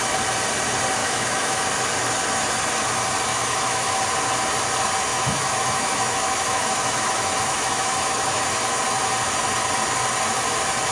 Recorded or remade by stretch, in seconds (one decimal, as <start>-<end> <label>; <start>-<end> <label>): 0.0-1.0 recorded; 1.0-1.6 remade; 1.6-3.3 recorded; 3.3-4.0 remade; 4.0-5.1 recorded; 5.1-8.4 remade; 8.4-10.9 recorded